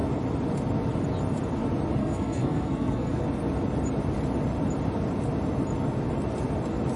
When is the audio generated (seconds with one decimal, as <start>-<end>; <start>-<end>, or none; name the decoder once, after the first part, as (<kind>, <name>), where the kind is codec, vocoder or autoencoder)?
2.0-3.1 (codec, SNAC)